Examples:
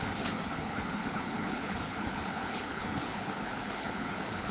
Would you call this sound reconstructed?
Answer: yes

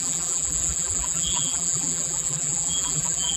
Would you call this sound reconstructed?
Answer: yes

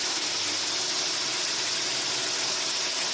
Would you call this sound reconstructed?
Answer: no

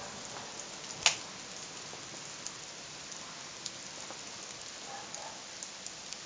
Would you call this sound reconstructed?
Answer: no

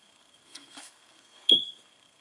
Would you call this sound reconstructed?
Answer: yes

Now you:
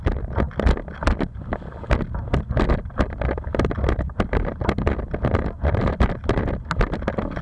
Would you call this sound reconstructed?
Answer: no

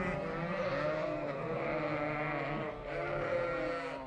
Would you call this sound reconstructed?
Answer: no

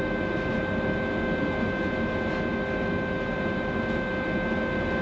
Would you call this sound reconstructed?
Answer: no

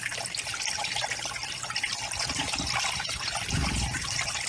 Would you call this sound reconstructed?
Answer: yes